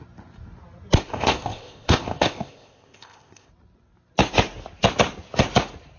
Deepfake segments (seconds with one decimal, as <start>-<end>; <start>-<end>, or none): 1.1-3.5